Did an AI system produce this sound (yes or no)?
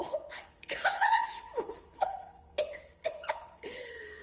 yes